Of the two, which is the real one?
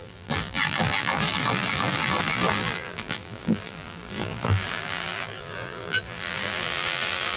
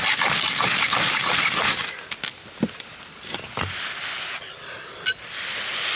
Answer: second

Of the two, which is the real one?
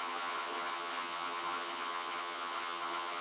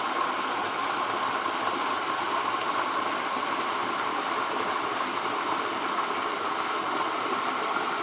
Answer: second